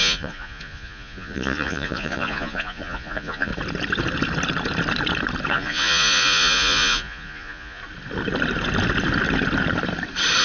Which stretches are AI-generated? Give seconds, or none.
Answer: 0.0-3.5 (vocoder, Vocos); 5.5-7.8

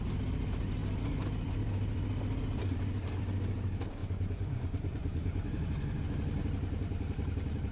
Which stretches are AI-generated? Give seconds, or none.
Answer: 4.0-6.0 (vocoder, Vocos)

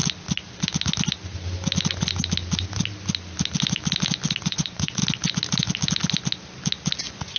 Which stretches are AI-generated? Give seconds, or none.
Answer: 4.4-5.0 (vocoder, Vocos); 7.0-7.4

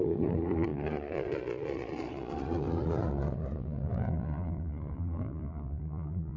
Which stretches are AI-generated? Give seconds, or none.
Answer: 0.0-6.4 (vocoder, Vocos)

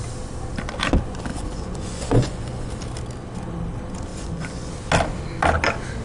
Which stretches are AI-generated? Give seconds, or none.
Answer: 1.3-2.7 (vocoder, Vocos); 4.1-4.7